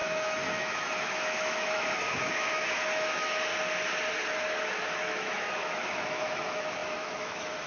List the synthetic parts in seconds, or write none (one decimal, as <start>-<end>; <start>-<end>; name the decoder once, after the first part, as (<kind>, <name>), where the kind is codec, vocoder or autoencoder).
0.0-3.5 (autoencoder, DAC-VAE); 4.6-7.7